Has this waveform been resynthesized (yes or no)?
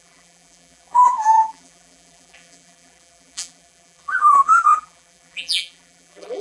yes